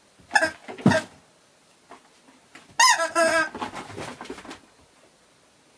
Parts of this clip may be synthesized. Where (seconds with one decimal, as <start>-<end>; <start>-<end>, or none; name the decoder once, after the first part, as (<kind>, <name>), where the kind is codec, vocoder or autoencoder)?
none